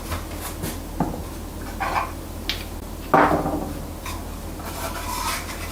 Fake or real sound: real